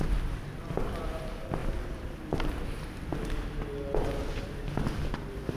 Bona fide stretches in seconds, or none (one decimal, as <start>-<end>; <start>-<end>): 0.0-5.6